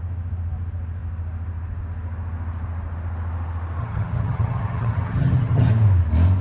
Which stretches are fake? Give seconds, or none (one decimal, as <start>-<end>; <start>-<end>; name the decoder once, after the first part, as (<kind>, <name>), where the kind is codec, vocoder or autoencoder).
3.8-5.7 (vocoder, HiFi-GAN)